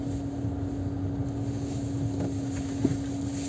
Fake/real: real